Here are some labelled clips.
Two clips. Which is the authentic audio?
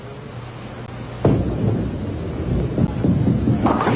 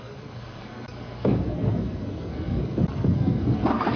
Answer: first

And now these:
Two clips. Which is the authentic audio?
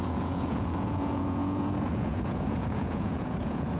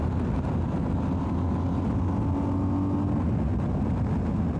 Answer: second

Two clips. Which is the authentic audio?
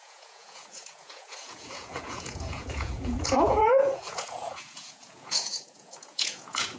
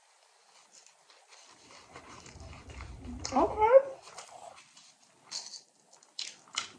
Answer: second